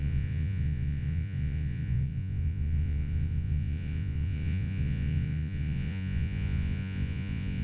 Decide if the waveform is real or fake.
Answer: fake